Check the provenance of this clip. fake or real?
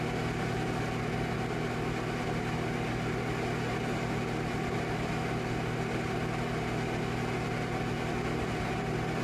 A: real